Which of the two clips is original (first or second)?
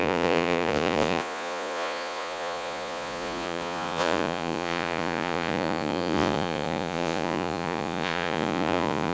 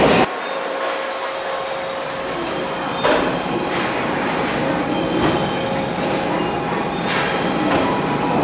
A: second